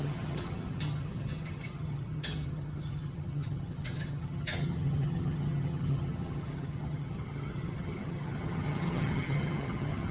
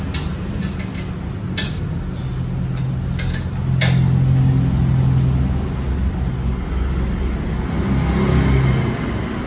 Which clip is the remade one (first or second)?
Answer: first